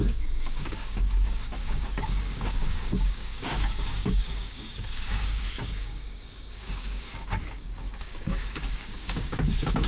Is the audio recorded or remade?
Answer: remade